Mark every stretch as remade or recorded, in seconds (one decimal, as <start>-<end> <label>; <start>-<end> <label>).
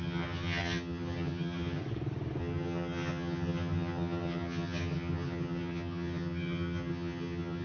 0.0-1.8 remade; 1.8-2.4 recorded; 2.4-7.6 remade